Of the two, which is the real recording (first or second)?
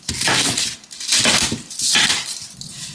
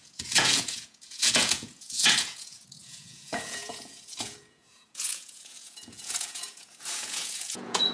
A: first